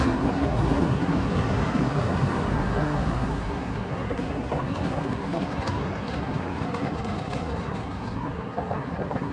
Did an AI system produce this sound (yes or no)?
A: yes